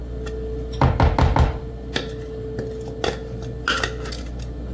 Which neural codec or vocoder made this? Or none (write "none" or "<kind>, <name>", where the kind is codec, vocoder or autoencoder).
none